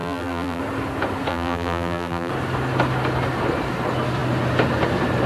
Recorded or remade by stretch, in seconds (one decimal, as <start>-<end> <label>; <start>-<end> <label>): 0.0-0.6 remade; 0.6-1.3 recorded; 1.3-2.3 remade; 2.3-5.3 recorded

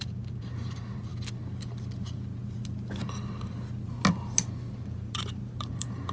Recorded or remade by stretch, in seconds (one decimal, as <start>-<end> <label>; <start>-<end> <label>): 0.0-1.1 remade; 1.1-4.8 recorded; 4.8-6.1 remade

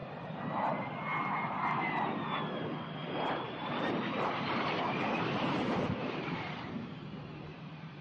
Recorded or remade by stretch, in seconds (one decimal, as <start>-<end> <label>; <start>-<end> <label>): 0.0-0.7 remade; 0.7-3.0 recorded; 3.0-8.0 remade

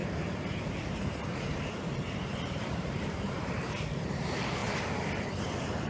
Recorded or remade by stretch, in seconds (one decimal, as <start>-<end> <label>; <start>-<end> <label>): 0.0-4.6 remade; 4.6-5.4 recorded; 5.4-5.9 remade

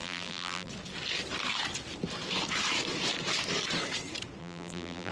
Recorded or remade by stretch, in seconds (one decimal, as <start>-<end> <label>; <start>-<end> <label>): 0.0-0.7 remade; 0.7-4.4 recorded; 4.4-5.1 remade

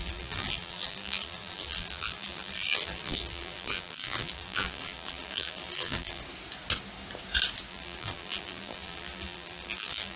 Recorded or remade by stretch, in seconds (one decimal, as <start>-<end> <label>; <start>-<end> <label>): 0.0-6.2 remade; 6.2-7.7 recorded; 7.7-10.2 remade

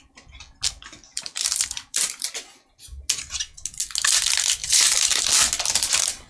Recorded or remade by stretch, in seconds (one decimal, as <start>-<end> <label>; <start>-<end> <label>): 0.0-1.1 recorded; 1.1-2.3 remade; 2.3-4.6 recorded; 4.6-5.2 remade; 5.2-6.3 recorded